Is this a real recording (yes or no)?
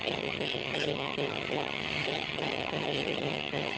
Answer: no